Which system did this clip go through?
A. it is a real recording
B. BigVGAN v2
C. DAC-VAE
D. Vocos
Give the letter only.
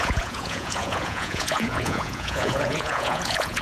D